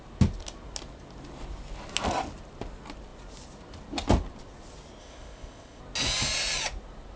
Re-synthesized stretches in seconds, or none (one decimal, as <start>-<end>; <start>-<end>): 5.0-5.8